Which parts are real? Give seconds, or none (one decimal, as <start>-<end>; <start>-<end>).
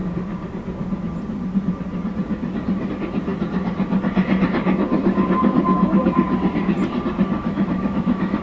0.0-7.4